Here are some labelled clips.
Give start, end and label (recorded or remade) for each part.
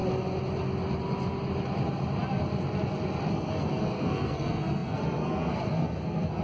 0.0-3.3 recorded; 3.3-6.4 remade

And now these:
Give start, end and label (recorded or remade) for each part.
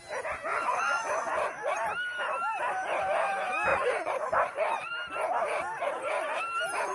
0.0-0.5 recorded; 0.5-1.7 remade; 1.7-3.7 recorded; 3.7-4.9 remade; 4.9-6.9 recorded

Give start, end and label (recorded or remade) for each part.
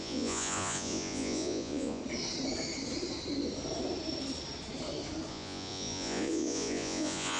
0.0-2.0 remade; 2.0-5.3 recorded; 5.3-7.4 remade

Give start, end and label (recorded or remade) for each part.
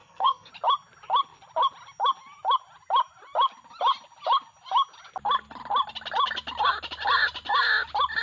0.0-0.5 remade; 0.5-8.2 recorded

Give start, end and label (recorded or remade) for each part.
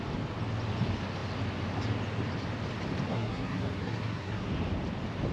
0.0-3.1 recorded; 3.1-4.5 remade; 4.5-5.3 recorded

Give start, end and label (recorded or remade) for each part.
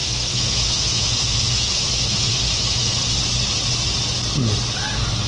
0.0-3.2 remade; 3.2-5.3 recorded